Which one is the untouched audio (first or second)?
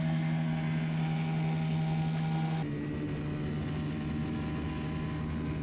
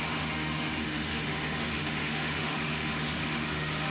first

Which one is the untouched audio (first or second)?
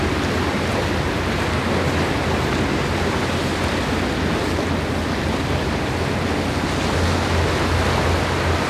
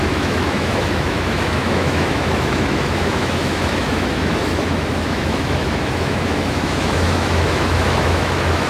first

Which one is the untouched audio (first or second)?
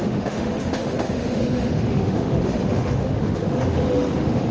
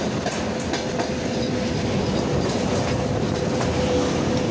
second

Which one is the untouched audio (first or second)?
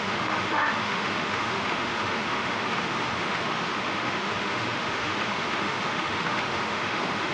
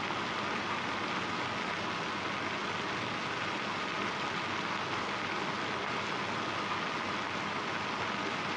second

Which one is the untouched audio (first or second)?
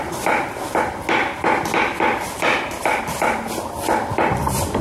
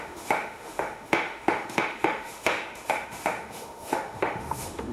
first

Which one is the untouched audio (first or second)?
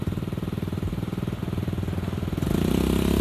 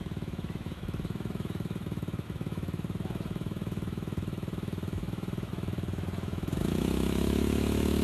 first